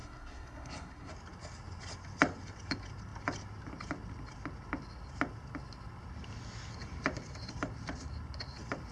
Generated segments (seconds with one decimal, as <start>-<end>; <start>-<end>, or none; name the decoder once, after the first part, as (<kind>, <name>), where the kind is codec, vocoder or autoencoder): 0.0-1.1 (codec, SNAC)